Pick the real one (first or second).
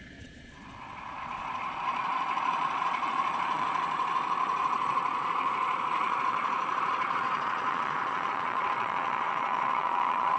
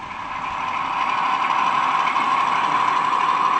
second